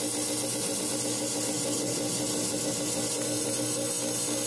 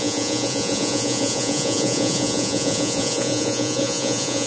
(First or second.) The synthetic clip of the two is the second